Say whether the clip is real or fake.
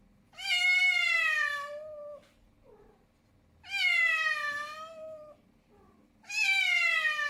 real